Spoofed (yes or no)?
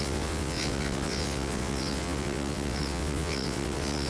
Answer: yes